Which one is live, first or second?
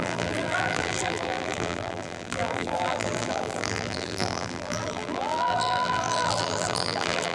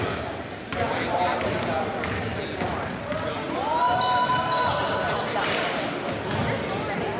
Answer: second